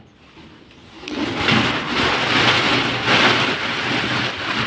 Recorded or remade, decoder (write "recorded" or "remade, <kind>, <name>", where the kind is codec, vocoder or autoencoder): recorded